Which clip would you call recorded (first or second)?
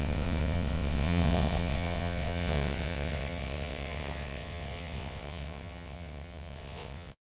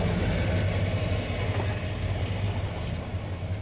second